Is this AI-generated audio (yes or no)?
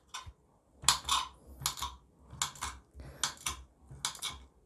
no